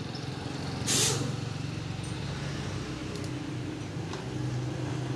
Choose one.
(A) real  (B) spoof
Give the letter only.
A